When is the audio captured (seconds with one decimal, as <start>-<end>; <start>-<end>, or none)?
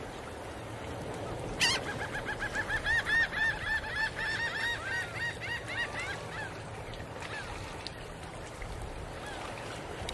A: 0.0-10.1